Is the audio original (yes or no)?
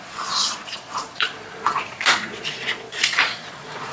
no